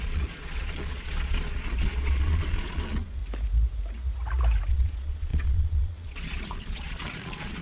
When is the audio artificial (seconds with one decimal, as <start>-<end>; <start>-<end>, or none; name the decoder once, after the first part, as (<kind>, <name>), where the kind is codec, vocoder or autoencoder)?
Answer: 0.0-3.2 (vocoder, Vocos); 4.7-7.6